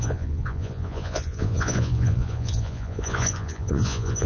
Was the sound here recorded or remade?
remade